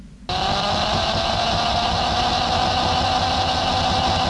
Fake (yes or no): no